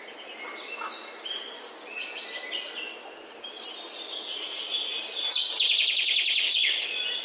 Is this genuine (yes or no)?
yes